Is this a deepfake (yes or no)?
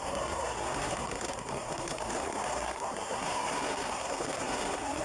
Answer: yes